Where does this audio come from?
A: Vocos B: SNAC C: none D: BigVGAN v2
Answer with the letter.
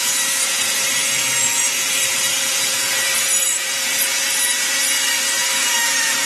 A